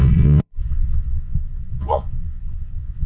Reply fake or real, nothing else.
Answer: fake